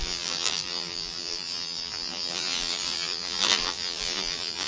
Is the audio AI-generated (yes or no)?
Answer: yes